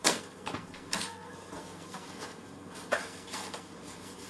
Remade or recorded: remade